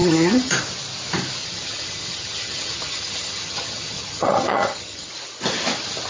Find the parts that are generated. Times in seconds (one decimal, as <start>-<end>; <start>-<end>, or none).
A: 0.0-0.5; 1.4-5.1